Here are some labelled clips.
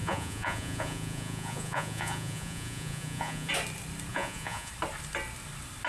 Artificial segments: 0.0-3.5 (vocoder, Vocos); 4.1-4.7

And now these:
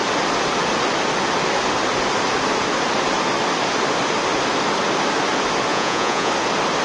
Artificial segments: 5.7-6.3 (vocoder, Vocos)

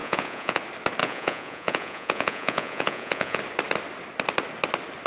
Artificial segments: 0.0-0.6 (vocoder, Vocos); 1.0-3.4